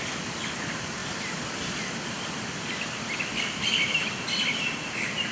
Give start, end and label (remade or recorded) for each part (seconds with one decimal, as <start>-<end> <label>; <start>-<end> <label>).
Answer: 0.0-5.3 recorded